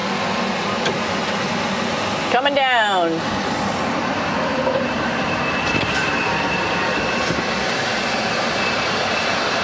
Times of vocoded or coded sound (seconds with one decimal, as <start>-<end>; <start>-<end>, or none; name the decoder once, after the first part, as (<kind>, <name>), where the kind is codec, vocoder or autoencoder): 3.7-6.1 (vocoder, BigVGAN v2); 8.3-9.6